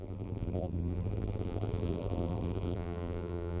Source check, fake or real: fake